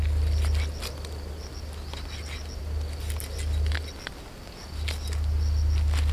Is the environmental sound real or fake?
real